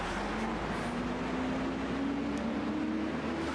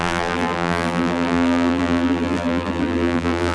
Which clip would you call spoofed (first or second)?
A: second